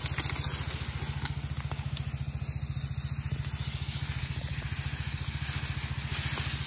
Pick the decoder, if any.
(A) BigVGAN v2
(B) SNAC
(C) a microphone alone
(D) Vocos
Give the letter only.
C